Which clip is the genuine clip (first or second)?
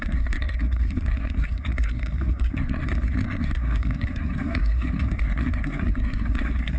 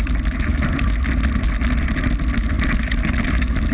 second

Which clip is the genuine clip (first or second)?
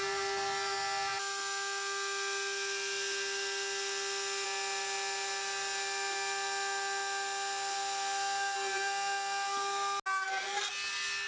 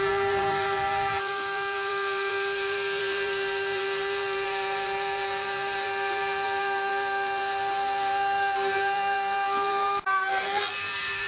first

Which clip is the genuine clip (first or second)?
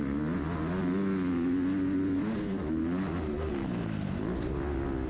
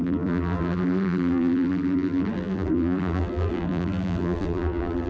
first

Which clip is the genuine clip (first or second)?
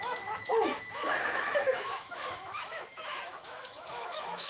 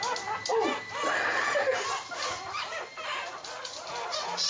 second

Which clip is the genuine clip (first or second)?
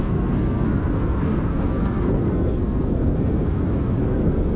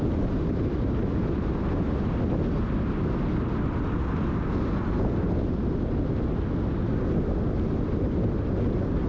second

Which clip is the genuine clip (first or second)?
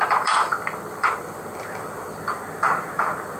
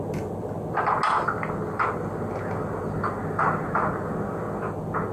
second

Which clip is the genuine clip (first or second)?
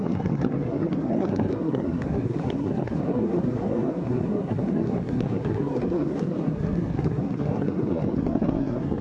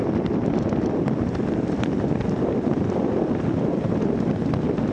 second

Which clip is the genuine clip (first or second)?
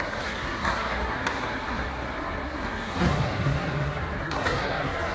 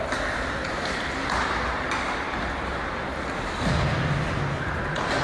second